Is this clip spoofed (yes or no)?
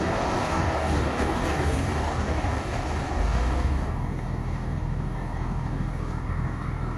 yes